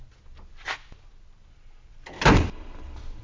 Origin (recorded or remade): recorded